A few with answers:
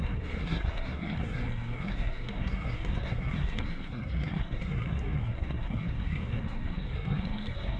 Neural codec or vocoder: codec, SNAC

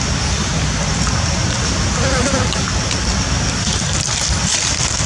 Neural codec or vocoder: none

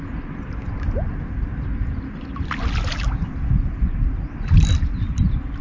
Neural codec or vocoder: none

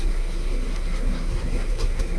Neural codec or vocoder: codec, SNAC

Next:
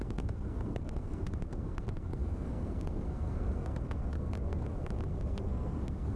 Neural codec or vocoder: codec, SNAC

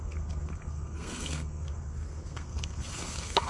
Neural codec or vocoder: codec, SNAC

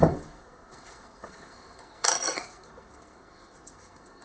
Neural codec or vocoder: codec, SNAC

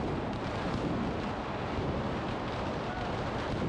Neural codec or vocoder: none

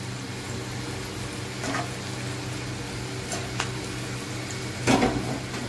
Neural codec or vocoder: none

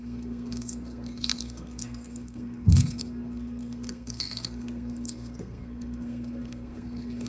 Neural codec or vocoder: codec, SNAC